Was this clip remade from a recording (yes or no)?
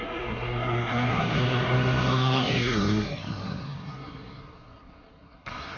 yes